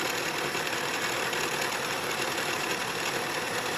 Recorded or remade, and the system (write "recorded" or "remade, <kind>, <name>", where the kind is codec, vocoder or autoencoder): remade, vocoder, BigVGAN v2